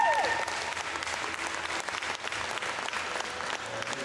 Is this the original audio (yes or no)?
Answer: yes